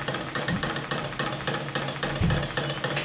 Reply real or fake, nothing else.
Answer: real